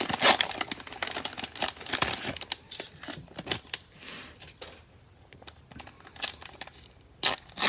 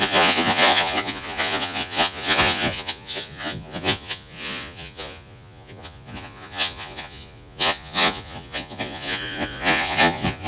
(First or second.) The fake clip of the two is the second